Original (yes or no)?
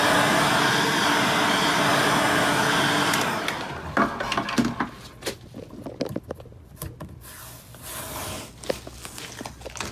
yes